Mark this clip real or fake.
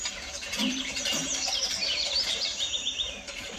fake